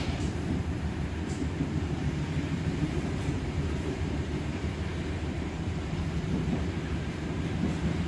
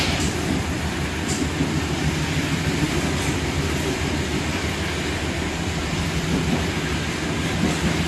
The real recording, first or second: second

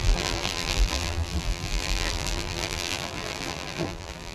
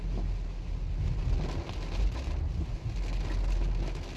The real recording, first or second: second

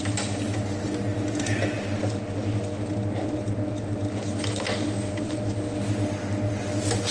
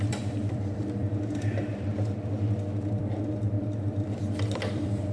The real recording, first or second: first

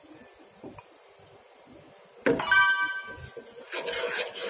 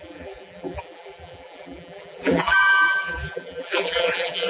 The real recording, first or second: first